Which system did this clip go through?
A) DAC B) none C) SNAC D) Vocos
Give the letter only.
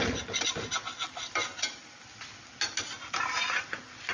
B